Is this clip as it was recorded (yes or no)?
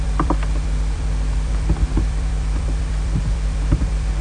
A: no